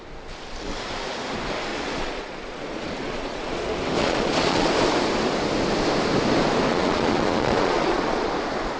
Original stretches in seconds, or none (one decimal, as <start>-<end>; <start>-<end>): 0.0-1.7; 3.6-4.0; 4.7-6.7; 8.3-8.8